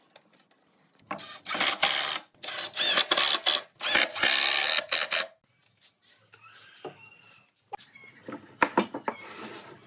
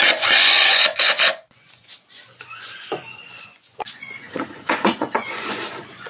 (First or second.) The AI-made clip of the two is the second